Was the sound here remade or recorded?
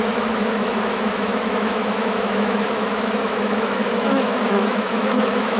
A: remade